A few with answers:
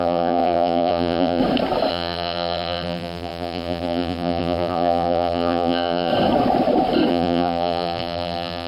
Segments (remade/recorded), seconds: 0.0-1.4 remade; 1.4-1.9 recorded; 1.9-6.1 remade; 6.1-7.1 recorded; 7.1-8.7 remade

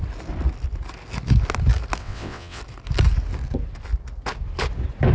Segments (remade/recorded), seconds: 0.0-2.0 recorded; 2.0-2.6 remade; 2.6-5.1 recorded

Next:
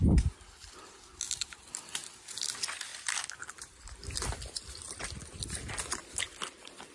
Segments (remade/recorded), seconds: 0.0-2.9 recorded; 2.9-5.0 remade; 5.0-6.9 recorded

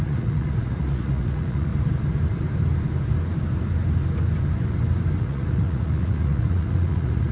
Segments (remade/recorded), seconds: 0.0-1.7 remade; 1.7-5.2 recorded; 5.2-7.3 remade